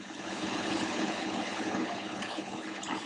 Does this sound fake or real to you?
fake